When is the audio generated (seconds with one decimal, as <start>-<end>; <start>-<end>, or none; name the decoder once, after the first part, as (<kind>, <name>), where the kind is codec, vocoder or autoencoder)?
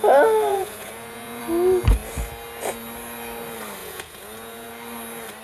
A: 0.5-1.4 (vocoder, Vocos); 3.8-4.7